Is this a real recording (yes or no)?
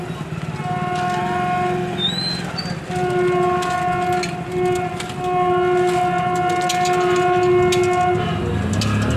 yes